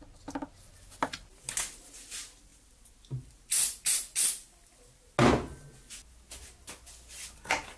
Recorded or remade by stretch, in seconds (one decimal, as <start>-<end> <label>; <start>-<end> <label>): 0.0-7.8 recorded